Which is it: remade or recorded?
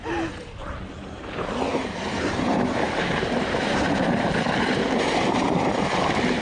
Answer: remade